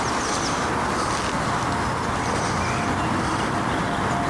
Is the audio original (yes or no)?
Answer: yes